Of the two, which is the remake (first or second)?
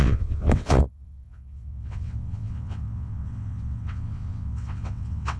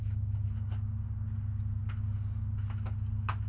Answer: first